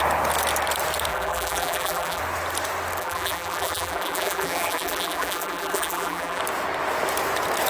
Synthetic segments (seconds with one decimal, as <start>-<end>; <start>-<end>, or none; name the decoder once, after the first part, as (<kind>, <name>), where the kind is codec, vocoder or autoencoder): 1.1-2.2 (vocoder, BigVGAN v2); 3.0-6.4